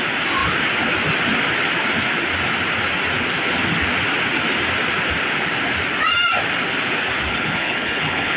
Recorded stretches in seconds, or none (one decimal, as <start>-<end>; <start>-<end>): 0.0-7.3